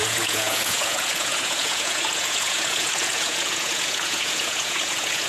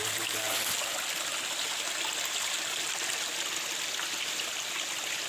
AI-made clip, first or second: first